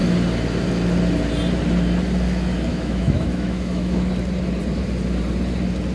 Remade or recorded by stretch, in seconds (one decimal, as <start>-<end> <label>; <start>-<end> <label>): 0.0-2.7 recorded; 2.7-4.1 remade; 4.1-5.9 recorded